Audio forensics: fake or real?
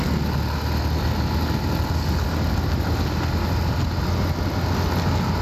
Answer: real